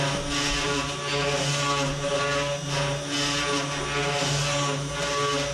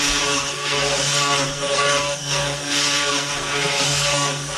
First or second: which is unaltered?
first